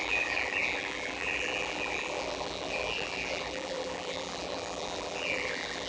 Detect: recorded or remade remade